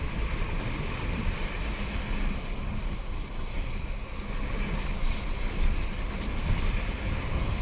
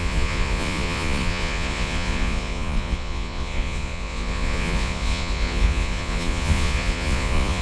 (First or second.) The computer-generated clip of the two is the second